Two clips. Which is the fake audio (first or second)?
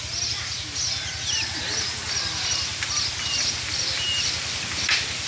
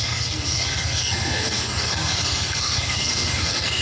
second